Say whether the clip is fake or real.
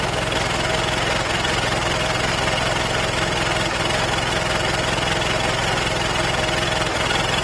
real